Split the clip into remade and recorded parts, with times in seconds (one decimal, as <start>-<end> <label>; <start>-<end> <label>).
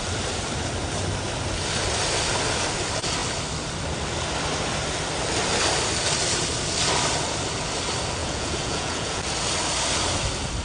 0.0-8.2 recorded; 8.2-9.2 remade; 9.2-10.6 recorded